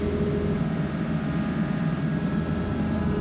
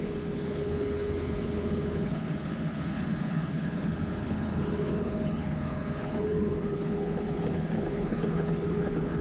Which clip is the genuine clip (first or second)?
first